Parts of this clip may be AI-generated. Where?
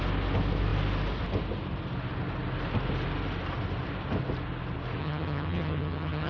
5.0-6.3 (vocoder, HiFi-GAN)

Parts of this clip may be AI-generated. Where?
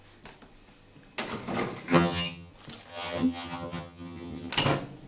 1.9-2.5 (vocoder, HiFi-GAN); 2.9-4.5